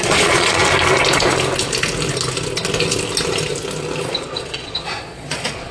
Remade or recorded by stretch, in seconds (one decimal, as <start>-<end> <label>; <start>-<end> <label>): 0.0-0.6 remade; 0.6-4.0 recorded; 4.0-5.7 remade